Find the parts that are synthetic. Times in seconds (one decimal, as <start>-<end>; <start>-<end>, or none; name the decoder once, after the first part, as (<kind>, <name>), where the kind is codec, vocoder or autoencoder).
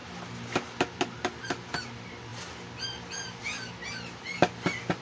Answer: none